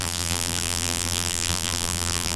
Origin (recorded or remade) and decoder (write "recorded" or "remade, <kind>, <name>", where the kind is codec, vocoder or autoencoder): remade, vocoder, BigVGAN v2